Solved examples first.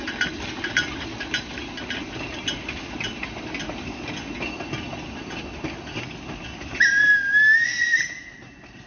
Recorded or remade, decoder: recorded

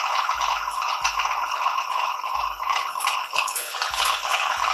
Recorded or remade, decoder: remade, codec, HILCodec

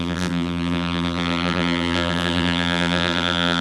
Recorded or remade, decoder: remade, vocoder, BigVGAN v2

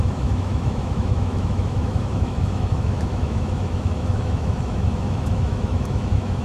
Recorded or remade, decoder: remade, autoencoder, DAC-VAE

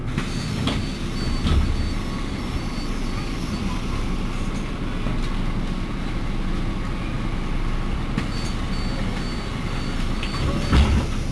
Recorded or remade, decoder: recorded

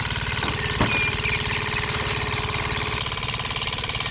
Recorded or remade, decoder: recorded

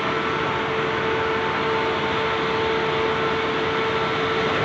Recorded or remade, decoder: recorded